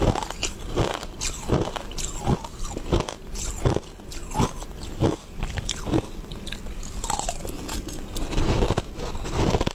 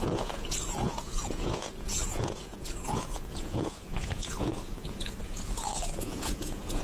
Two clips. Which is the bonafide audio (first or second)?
first